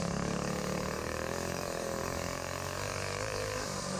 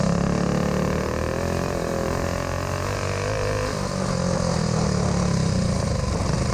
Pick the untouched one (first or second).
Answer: second